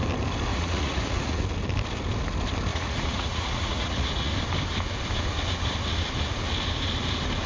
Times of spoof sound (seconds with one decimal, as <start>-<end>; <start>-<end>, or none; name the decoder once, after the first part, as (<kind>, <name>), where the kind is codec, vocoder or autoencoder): 0.5-1.4 (vocoder, Vocos); 2.7-4.3